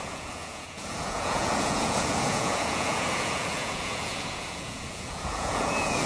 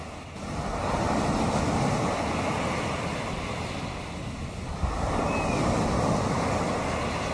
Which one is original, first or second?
second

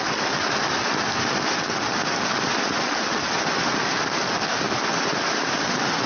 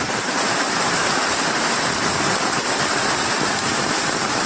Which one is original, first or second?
first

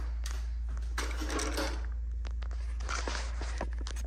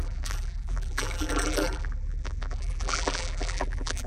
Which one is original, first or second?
first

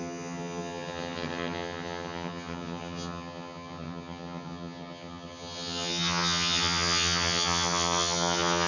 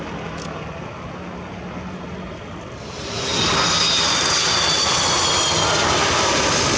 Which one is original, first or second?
second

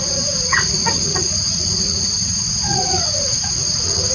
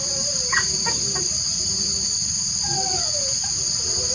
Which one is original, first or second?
second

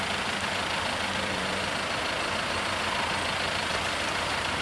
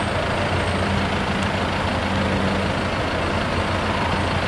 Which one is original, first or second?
second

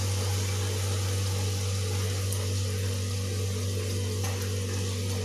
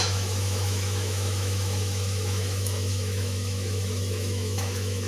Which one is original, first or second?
first